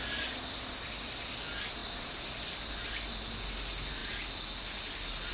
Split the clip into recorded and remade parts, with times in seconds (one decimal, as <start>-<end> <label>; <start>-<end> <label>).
0.0-5.3 recorded